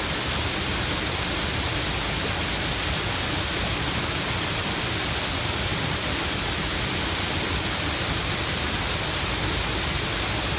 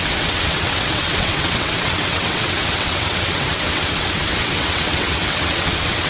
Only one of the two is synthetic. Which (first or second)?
second